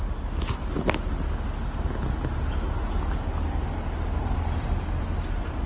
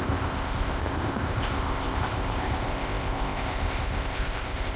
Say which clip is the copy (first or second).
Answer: second